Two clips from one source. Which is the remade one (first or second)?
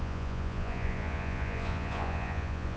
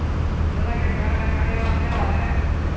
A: first